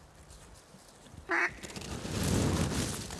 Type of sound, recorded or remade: recorded